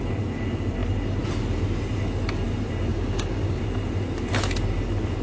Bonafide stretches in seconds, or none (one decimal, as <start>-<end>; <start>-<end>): 0.0-2.9; 3.6-5.2